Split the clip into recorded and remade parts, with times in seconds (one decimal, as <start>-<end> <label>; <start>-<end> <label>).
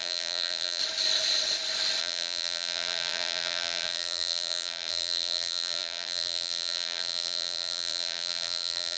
0.0-0.8 remade; 0.8-2.0 recorded; 2.0-9.0 remade